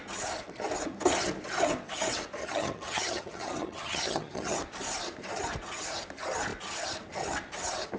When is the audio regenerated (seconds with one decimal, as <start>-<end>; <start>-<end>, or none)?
2.4-4.6